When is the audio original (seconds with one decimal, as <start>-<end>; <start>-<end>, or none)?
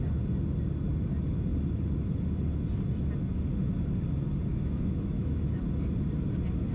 0.0-4.5; 5.6-6.7